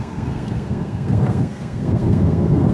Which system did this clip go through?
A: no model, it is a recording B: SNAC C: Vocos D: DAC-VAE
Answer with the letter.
B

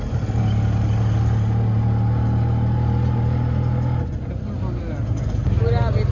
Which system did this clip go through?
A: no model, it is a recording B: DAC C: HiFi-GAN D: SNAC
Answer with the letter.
A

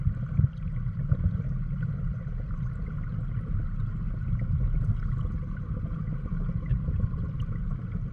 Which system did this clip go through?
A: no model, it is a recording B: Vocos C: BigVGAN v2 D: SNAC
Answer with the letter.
A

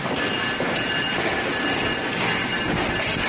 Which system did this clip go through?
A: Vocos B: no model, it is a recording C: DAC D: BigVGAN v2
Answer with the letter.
B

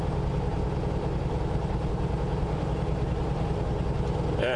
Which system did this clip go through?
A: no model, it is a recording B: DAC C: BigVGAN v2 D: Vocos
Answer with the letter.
A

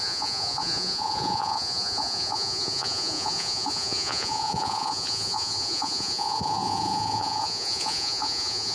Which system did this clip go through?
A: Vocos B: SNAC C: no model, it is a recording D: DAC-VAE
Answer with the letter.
A